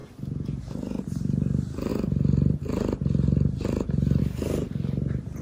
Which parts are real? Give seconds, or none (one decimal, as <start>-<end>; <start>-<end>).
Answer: 0.0-5.4